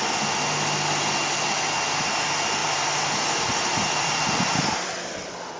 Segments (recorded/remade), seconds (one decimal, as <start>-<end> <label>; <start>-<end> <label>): 0.0-2.6 recorded; 2.6-5.6 remade